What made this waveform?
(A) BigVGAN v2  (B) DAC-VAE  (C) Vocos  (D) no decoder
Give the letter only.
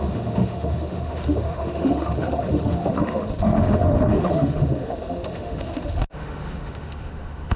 B